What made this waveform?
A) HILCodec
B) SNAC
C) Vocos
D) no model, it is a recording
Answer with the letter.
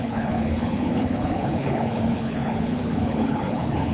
A